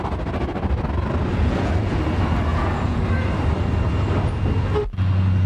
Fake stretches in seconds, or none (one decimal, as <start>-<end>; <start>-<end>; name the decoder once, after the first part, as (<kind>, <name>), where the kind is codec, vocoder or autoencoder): 1.3-2.0 (vocoder, Vocos); 2.5-3.0